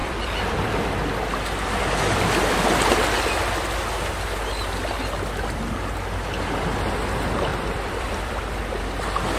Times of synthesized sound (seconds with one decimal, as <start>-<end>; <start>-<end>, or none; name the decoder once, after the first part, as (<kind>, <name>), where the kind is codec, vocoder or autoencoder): 0.0-0.9 (vocoder, BigVGAN v2); 7.5-8.8